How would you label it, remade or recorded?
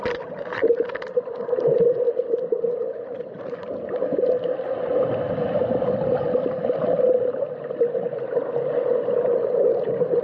recorded